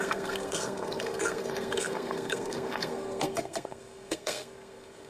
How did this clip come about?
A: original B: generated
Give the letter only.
B